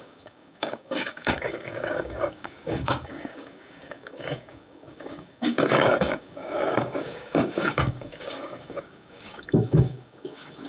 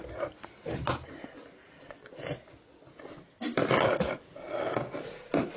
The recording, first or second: second